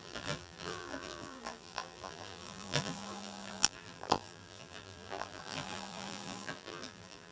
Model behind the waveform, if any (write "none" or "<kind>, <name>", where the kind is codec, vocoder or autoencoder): vocoder, BigVGAN v2